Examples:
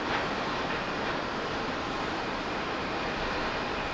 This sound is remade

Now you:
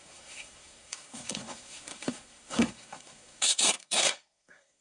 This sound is remade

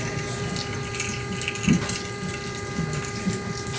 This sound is recorded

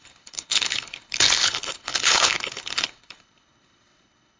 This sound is remade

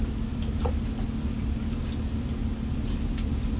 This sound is recorded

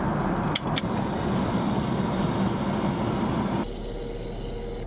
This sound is recorded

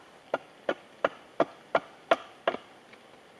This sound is recorded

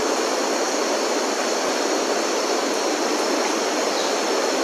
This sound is recorded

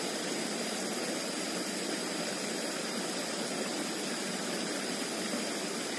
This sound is recorded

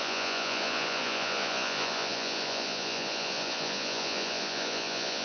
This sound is remade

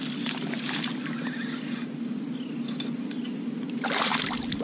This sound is recorded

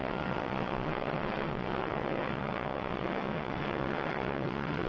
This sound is remade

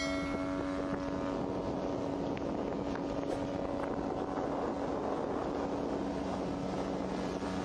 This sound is recorded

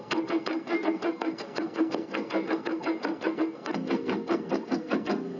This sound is remade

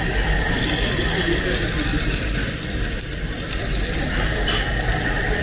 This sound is recorded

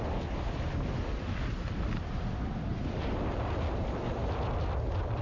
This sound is remade